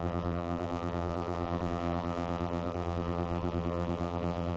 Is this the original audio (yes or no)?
no